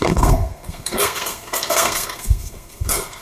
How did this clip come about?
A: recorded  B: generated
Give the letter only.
B